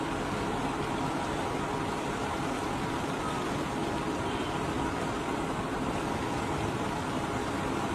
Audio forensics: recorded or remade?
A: recorded